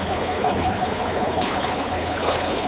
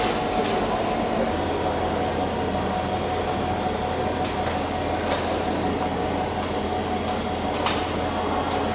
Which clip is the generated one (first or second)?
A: first